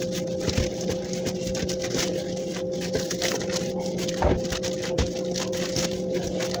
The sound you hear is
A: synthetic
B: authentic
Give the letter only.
B